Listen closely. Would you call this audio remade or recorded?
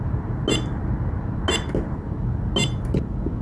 recorded